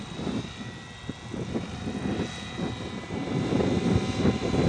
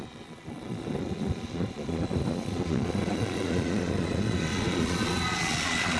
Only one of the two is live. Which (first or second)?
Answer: first